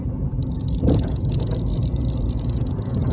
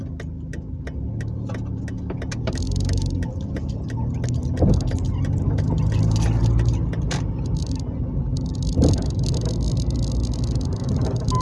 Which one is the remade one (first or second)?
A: first